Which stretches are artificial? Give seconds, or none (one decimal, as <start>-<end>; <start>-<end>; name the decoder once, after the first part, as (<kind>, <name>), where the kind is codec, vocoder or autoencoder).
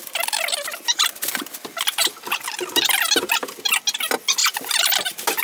none